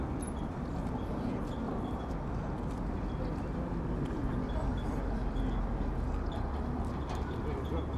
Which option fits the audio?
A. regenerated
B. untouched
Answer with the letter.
B